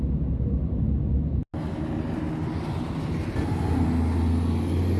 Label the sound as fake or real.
real